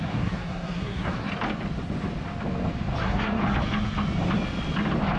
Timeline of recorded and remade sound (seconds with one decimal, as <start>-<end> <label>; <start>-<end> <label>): 0.0-1.3 remade; 1.3-3.0 recorded; 3.0-3.4 remade; 3.4-5.2 recorded